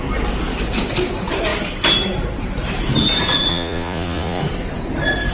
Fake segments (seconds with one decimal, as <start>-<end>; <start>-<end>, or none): 3.5-4.4